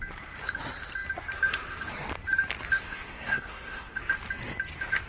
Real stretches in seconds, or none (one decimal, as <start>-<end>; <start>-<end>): 0.0-2.8; 4.0-5.1